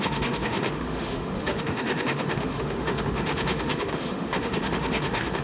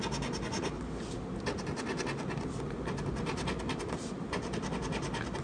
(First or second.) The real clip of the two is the second